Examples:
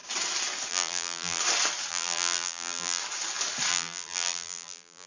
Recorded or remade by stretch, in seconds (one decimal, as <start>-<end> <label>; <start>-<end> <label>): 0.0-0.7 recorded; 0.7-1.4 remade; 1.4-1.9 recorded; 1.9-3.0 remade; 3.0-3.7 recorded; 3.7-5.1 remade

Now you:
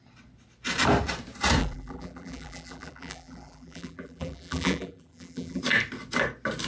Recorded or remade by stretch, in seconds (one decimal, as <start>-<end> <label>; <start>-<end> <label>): 0.0-1.6 recorded; 1.6-5.6 remade; 5.6-6.7 recorded

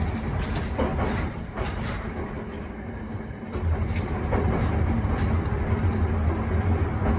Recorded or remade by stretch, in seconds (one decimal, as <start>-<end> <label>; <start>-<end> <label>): 0.0-0.9 recorded; 0.9-5.0 remade; 5.0-7.2 recorded